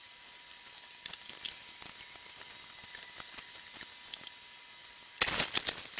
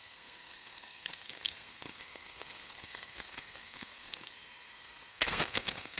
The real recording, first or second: first